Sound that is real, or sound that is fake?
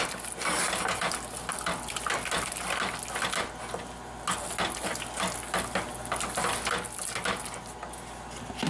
real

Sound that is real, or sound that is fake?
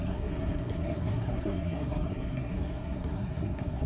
fake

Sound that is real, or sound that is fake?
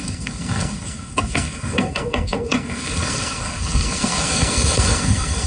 fake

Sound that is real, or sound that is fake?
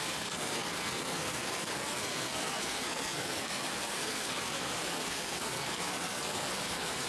fake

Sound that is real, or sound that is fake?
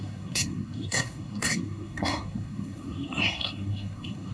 fake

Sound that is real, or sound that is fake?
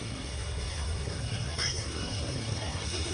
fake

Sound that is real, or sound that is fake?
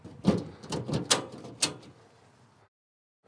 real